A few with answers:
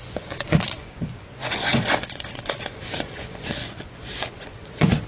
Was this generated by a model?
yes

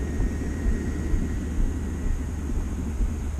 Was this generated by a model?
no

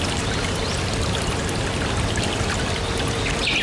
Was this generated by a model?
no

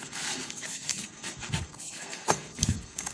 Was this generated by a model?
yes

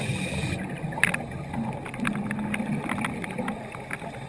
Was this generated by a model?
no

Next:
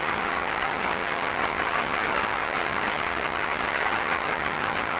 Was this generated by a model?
yes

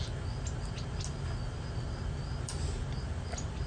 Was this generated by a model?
no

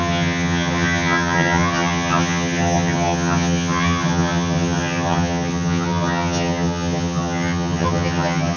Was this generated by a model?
yes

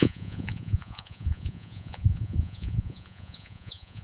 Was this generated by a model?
yes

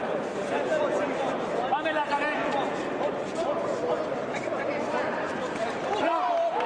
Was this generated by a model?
no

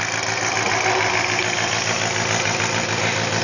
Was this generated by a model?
no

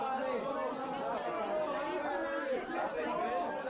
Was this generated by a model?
no